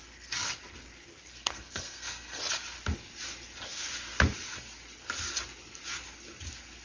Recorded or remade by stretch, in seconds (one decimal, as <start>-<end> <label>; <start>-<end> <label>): 0.0-1.3 recorded; 1.3-2.4 remade; 2.4-6.8 recorded